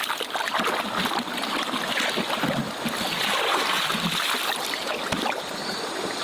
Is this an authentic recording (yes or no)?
yes